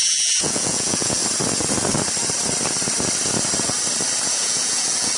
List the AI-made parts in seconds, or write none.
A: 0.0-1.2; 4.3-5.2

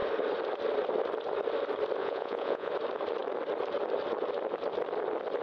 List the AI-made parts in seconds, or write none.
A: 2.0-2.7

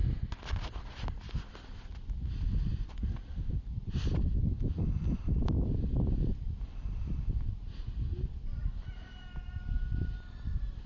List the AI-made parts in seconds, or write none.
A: none

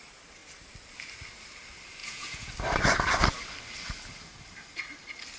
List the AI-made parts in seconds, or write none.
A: 2.0-2.5